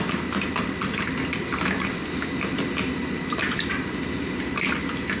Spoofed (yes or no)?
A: no